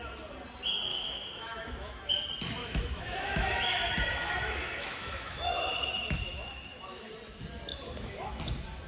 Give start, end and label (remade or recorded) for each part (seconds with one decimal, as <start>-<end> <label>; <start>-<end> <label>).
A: 0.0-0.9 recorded; 0.9-2.1 remade; 2.1-2.6 recorded; 2.6-7.1 remade; 7.1-7.7 recorded; 7.7-8.4 remade; 8.4-8.9 recorded